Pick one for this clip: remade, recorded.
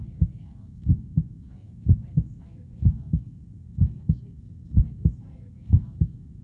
remade